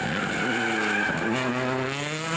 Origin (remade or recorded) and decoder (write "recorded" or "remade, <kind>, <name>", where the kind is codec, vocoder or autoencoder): recorded